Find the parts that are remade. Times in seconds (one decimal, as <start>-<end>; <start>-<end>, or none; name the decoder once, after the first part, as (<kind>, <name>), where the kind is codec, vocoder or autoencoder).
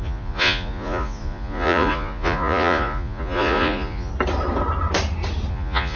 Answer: 0.0-4.1 (vocoder, Vocos); 5.5-6.0